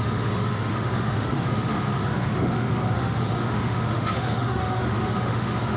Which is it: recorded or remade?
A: remade